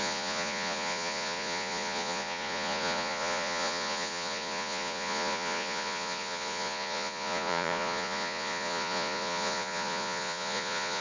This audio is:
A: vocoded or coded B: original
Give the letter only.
A